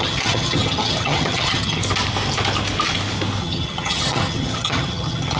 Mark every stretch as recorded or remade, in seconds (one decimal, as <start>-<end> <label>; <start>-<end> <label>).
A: 0.0-1.8 remade; 1.8-3.4 recorded; 3.4-5.4 remade